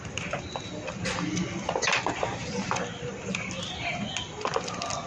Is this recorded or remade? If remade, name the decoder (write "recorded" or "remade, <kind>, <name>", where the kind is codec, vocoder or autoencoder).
recorded